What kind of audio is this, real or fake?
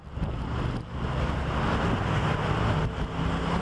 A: real